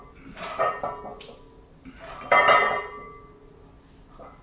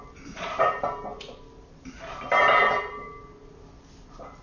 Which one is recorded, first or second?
first